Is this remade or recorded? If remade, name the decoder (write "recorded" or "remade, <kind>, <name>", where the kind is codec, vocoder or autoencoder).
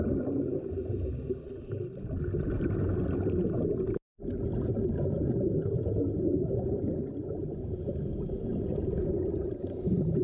recorded